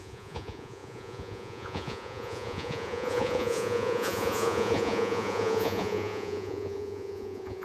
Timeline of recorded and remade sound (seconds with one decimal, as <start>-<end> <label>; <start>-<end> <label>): 0.0-7.6 remade